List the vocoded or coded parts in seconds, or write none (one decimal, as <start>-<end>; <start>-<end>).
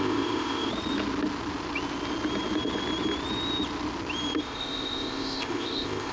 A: 0.0-0.7; 4.4-6.1